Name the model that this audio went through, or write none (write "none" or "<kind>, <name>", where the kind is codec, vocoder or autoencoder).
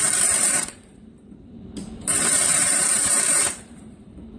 vocoder, BigVGAN v2